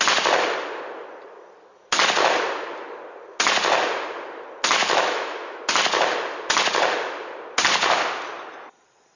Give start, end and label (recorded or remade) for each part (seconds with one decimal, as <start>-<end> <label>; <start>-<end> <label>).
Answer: 0.0-4.8 recorded; 4.8-5.6 remade; 5.6-9.2 recorded